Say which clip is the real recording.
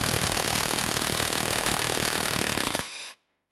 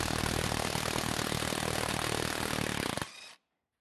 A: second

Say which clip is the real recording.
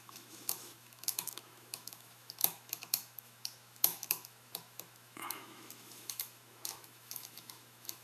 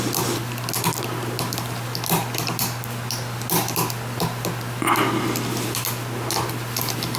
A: second